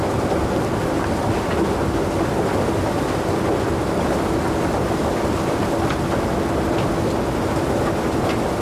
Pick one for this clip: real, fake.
real